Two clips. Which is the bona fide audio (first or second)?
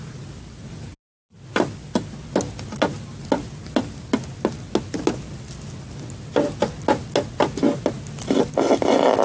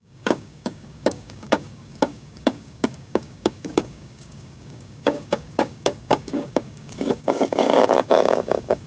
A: first